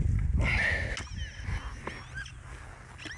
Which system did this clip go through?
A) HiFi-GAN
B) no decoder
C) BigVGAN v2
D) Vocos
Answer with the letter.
B